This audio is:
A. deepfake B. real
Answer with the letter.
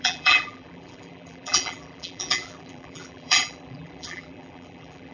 A